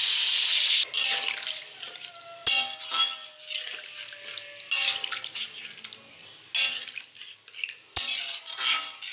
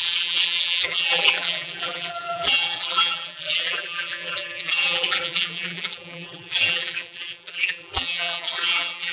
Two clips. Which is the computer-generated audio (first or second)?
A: second